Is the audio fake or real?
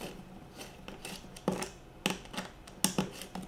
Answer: real